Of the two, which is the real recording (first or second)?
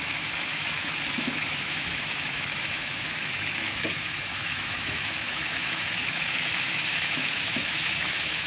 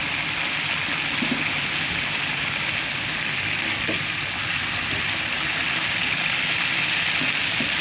second